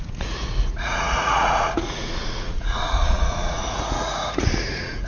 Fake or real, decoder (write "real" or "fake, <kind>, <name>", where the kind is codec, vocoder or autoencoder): fake, vocoder, Vocos